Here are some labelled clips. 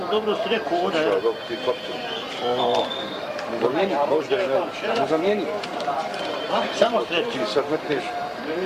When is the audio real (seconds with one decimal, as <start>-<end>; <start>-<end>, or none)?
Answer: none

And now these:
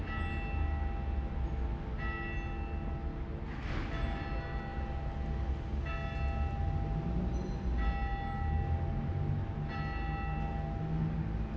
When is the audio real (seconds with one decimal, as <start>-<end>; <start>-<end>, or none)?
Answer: 0.0-11.6

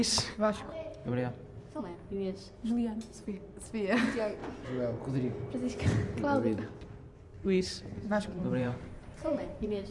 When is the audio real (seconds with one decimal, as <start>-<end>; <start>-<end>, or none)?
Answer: 0.0-1.0; 1.8-7.3

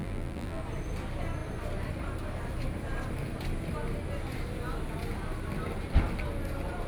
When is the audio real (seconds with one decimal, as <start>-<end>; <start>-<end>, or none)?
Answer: 0.6-6.9

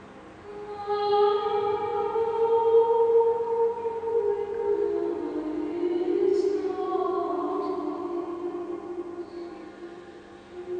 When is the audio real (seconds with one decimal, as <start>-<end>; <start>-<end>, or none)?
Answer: 0.0-10.8